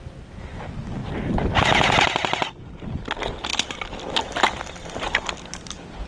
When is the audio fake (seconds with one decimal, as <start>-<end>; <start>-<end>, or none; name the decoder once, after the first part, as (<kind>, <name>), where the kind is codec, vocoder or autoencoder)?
none